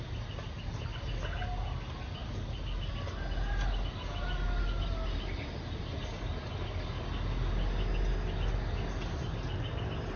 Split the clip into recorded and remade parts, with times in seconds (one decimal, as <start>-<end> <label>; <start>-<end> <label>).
0.0-10.2 recorded